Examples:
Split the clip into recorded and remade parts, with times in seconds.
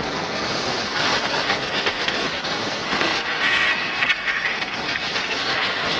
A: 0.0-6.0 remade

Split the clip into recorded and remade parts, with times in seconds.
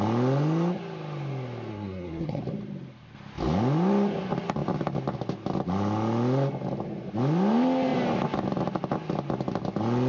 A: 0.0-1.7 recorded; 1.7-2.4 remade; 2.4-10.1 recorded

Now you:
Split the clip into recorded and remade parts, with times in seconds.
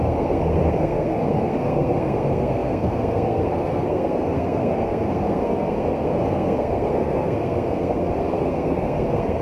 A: 0.0-9.4 remade